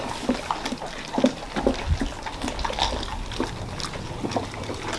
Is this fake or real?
real